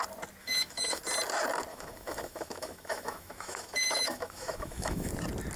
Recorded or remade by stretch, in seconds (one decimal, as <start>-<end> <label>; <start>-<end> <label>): 0.0-0.4 recorded; 0.4-1.0 remade; 1.0-1.7 recorded; 1.7-5.1 remade; 5.1-5.6 recorded

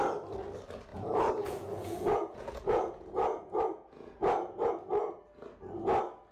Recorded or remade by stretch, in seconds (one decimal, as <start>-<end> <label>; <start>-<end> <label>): 0.0-0.9 recorded; 0.9-4.7 remade; 4.7-6.3 recorded

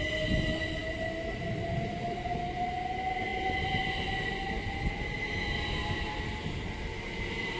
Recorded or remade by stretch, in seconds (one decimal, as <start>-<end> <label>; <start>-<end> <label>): 0.0-7.6 recorded